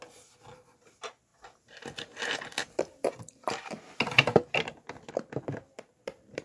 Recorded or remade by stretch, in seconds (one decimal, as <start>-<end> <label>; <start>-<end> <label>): 0.0-6.4 recorded